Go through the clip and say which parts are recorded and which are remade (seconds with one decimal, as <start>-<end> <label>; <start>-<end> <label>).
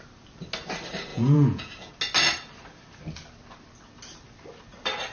0.0-1.1 recorded; 1.1-1.9 remade; 1.9-5.1 recorded